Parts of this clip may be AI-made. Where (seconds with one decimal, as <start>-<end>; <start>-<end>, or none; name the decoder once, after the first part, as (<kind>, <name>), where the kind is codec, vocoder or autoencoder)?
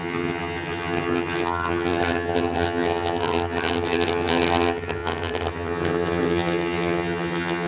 0.0-7.7 (vocoder, HiFi-GAN)